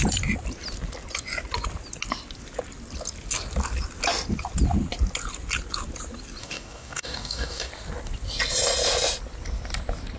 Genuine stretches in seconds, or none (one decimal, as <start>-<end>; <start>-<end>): 0.0-6.4; 7.7-10.2

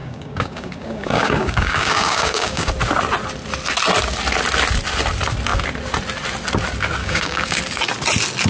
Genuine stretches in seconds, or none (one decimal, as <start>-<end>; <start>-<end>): 2.7-7.0; 7.6-8.5

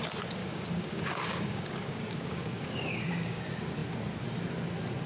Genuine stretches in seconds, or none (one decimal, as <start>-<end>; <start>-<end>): 0.0-0.4; 3.4-5.1

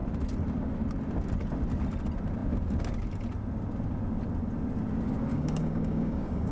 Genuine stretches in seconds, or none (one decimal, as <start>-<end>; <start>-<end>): 0.0-5.3